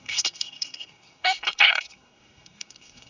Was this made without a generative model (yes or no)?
no